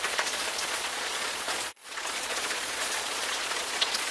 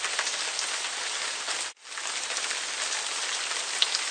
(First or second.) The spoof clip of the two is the first